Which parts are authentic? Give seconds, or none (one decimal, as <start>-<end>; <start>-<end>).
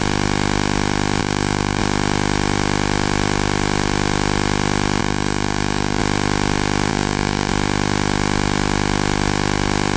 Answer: 0.0-1.2; 1.8-5.0; 6.0-6.9; 7.5-10.0